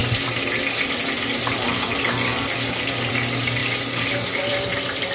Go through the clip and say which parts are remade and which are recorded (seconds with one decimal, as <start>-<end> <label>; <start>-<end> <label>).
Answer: 0.0-5.1 recorded